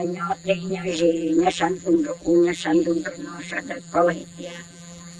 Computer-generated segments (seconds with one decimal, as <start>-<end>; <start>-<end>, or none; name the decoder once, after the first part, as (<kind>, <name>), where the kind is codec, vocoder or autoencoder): 0.0-5.2 (vocoder, BigVGAN v2)